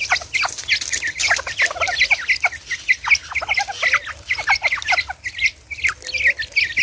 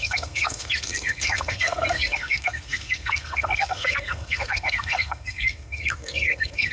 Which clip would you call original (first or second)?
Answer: first